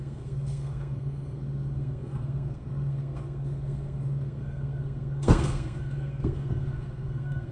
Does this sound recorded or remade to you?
remade